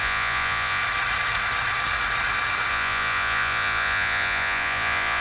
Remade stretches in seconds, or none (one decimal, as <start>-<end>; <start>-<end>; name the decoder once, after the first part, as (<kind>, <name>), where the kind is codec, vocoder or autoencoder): 0.0-0.8 (vocoder, Vocos); 2.7-5.2